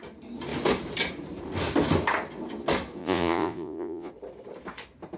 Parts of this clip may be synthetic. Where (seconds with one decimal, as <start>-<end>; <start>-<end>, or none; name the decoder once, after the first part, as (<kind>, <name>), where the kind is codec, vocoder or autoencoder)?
3.0-4.1 (vocoder, Vocos)